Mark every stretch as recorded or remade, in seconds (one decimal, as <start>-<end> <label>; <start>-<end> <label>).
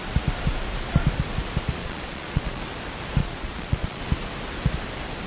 0.0-1.8 recorded; 1.8-2.6 remade; 2.6-3.2 recorded; 3.2-4.0 remade; 4.0-5.3 recorded